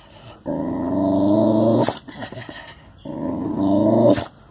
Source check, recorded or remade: recorded